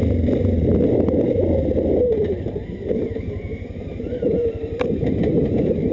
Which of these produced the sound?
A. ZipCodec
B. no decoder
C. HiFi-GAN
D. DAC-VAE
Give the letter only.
B